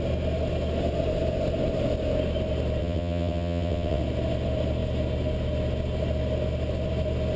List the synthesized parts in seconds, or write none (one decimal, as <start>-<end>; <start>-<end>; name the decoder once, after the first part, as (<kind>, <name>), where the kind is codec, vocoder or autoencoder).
2.8-4.0 (vocoder, WaveNeXt)